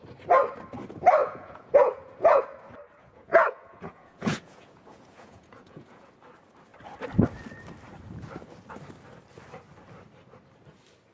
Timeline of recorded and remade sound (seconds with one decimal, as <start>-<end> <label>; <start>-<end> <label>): 0.0-1.2 recorded; 1.2-2.4 remade; 2.4-3.0 recorded; 3.0-6.1 remade; 6.1-11.1 recorded